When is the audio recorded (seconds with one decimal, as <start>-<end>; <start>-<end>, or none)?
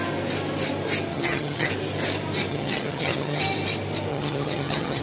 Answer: 0.0-1.1; 1.7-2.5; 3.4-4.1